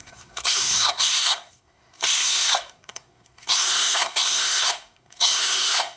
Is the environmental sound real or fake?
fake